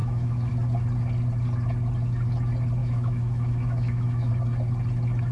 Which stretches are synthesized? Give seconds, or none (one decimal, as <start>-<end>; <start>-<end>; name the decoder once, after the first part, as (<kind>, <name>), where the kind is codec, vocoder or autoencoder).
0.0-0.5 (autoencoder, DAC-VAE); 2.8-4.3